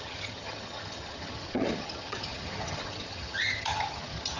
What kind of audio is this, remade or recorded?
remade